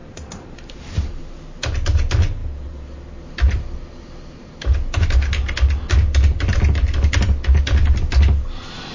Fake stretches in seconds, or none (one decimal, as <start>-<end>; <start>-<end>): 0.0-1.2